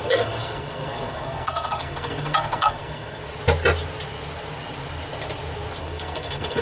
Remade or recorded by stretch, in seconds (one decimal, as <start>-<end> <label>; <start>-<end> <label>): 0.0-3.2 remade; 3.2-5.8 recorded; 5.8-6.6 remade